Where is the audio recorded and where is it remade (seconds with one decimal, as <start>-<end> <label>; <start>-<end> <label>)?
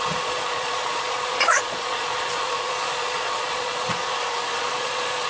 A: 0.0-4.0 remade; 4.0-4.6 recorded; 4.6-5.3 remade